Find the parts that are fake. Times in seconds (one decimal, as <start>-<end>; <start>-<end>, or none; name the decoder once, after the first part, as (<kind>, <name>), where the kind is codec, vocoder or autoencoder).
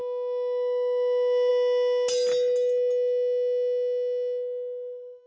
none